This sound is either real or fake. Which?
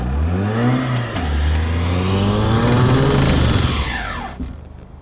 real